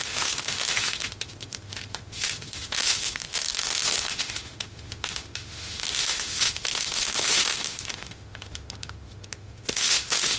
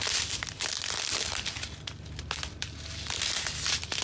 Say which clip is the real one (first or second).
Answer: second